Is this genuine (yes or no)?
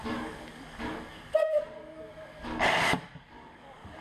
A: no